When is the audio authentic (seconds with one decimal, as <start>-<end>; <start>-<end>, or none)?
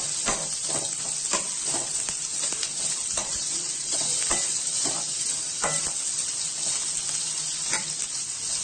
0.0-3.2; 4.0-8.6